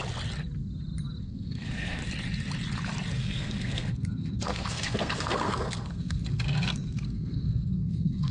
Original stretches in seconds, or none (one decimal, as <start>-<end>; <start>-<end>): 0.0-1.2; 2.0-3.1